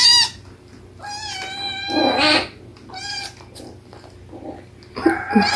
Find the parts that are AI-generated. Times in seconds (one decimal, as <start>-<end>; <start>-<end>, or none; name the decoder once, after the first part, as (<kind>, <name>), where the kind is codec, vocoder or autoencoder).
none